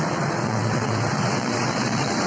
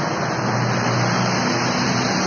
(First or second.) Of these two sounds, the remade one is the first